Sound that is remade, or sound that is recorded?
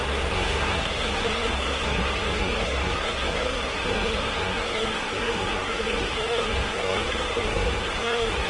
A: remade